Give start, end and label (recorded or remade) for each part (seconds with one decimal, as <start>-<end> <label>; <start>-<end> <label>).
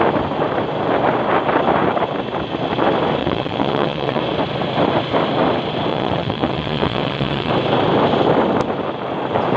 0.0-3.2 recorded; 3.2-4.2 remade; 4.2-5.9 recorded; 5.9-7.5 remade; 7.5-9.6 recorded